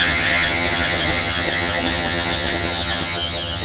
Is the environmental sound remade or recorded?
remade